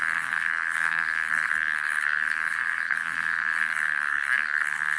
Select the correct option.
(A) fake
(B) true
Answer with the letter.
A